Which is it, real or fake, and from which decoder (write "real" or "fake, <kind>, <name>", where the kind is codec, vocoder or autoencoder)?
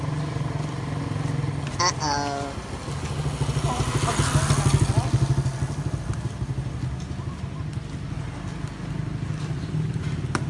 real